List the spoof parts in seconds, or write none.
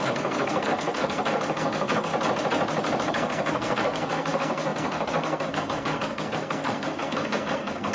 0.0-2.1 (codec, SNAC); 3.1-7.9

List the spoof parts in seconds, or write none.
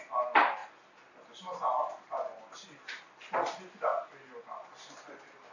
none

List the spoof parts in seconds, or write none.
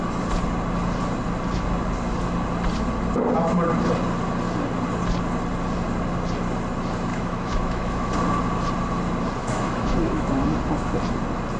7.1-8.1 (autoencoder, DAC-VAE); 9.4-10.4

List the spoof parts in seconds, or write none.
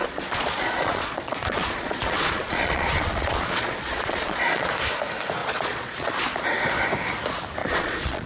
0.0-4.7 (vocoder, Vocos); 5.4-6.1; 7.6-8.3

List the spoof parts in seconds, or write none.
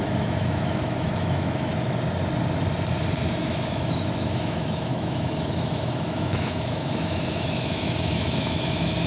0.0-1.7 (autoencoder, DAC-VAE); 3.3-9.1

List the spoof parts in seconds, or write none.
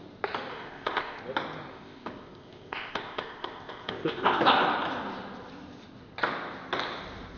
0.5-1.2 (codec, ZipCodec); 1.7-4.4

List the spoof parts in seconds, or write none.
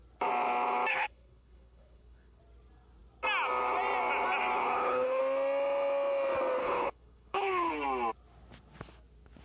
0.9-2.4 (codec, HILCodec); 4.6-5.2; 6.6-7.7